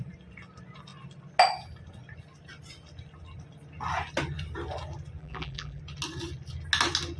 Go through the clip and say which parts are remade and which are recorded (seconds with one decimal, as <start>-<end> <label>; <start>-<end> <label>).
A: 0.0-5.2 recorded; 5.2-5.8 remade; 5.8-7.2 recorded